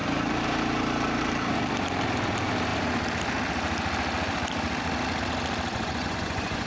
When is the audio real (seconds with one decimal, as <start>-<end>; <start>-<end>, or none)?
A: 0.0-5.7